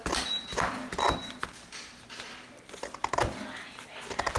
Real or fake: real